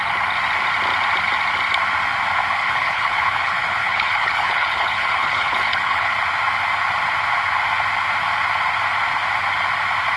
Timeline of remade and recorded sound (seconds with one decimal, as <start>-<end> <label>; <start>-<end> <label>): 0.0-2.6 recorded; 2.6-6.1 remade; 6.1-10.2 recorded